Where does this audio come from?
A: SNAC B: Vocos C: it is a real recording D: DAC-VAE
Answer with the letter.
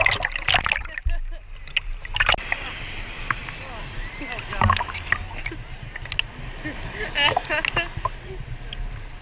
C